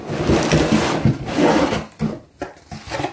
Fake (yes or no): no